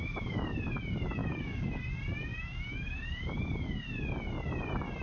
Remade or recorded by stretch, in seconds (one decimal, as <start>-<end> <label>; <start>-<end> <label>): 0.0-1.2 recorded; 1.2-1.8 remade; 1.8-2.3 recorded; 2.3-3.2 remade; 3.2-5.0 recorded